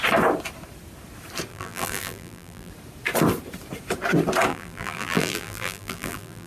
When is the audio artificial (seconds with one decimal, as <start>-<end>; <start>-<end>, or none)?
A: 1.5-2.7; 4.5-6.5